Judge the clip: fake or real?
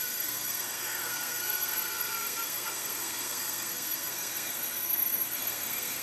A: fake